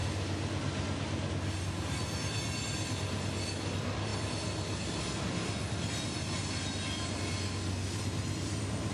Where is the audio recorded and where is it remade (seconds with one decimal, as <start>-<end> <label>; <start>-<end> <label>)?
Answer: 0.0-8.9 recorded